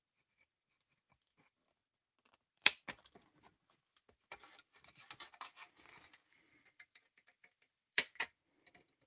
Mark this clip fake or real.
fake